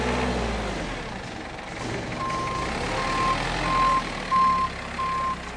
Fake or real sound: real